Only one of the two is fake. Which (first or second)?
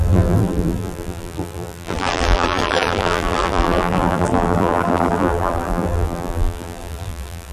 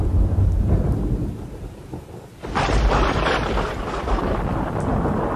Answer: first